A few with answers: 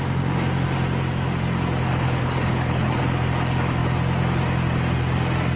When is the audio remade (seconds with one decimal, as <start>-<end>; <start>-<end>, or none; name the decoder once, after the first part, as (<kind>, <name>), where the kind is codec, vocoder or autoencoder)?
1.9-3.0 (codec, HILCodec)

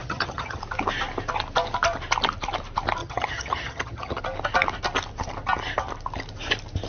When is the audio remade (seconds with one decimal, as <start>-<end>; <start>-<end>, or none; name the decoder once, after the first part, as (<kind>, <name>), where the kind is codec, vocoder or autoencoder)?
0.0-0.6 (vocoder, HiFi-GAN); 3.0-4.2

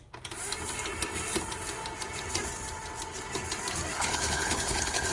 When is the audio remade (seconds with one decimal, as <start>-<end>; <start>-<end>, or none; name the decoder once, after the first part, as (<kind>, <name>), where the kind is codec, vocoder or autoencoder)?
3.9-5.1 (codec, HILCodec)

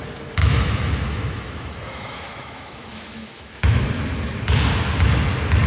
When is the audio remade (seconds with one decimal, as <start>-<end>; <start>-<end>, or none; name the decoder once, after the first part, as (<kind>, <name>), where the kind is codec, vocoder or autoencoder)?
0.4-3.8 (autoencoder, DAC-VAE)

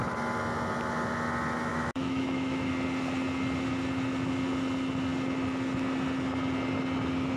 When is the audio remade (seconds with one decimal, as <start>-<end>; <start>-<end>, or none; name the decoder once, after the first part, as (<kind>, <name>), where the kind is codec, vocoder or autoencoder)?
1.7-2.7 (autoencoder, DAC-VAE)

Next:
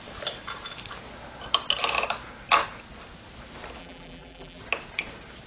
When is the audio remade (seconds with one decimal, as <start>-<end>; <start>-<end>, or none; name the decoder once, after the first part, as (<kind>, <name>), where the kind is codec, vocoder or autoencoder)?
3.8-4.6 (vocoder, BigVGAN v2)